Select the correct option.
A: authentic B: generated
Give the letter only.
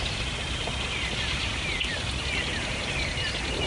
A